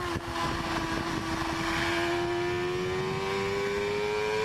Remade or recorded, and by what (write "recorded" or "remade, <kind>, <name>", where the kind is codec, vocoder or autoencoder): recorded